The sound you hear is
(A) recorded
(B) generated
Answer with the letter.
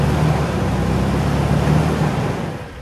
A